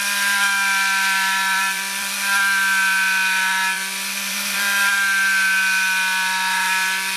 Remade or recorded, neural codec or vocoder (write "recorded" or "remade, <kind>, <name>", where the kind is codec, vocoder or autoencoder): remade, vocoder, BigVGAN v2